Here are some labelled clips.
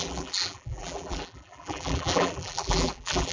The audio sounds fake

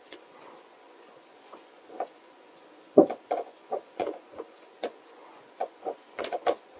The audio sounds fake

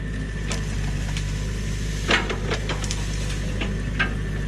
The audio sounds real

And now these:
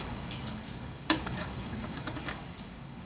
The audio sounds fake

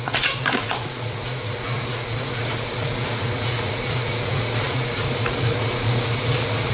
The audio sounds fake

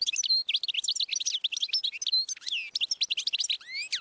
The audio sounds real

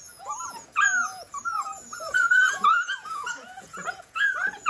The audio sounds fake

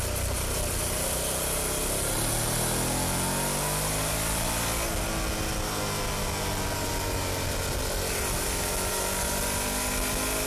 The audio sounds real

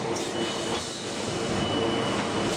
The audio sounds real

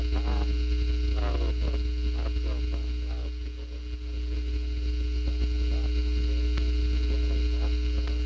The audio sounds real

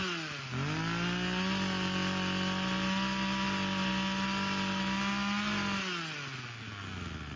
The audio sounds real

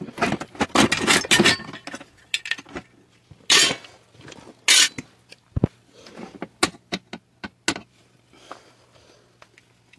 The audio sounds real